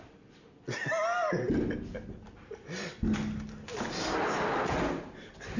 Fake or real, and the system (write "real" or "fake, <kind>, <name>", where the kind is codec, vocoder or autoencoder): real